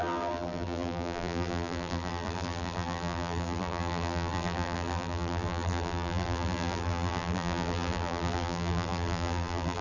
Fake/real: fake